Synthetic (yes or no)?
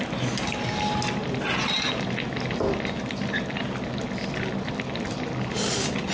no